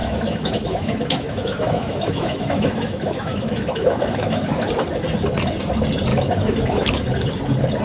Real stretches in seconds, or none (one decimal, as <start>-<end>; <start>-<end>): 4.7-6.1; 6.9-7.8